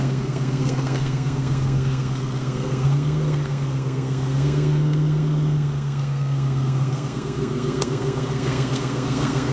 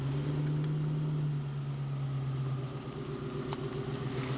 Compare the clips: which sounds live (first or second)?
second